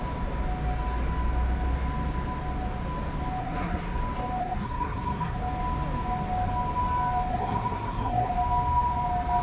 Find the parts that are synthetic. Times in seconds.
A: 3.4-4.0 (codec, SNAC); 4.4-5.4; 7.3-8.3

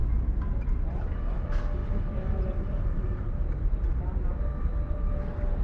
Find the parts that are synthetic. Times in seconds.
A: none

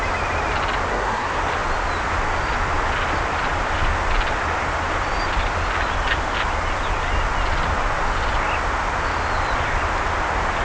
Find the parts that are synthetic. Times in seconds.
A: 0.9-1.4 (codec, SNAC)

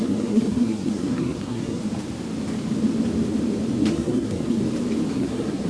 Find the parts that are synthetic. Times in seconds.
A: 0.0-1.8 (codec, SNAC); 3.9-4.6; 5.1-5.7

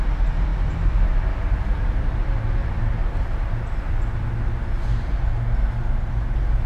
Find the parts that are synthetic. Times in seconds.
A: none

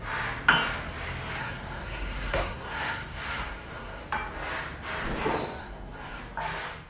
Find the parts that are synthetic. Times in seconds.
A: 1.4-4.0 (codec, SNAC); 5.6-6.2